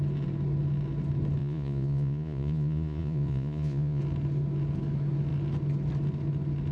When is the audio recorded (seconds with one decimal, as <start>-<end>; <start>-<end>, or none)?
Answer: 0.0-1.4; 4.0-6.7